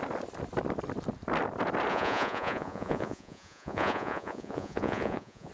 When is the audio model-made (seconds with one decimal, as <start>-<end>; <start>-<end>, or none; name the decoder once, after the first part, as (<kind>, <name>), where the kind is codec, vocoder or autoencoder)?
1.9-5.5 (vocoder, Vocos)